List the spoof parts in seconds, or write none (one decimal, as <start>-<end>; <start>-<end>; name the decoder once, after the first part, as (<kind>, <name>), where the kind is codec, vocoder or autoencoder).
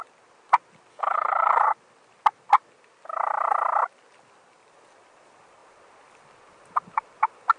0.9-1.6 (codec, HILCodec)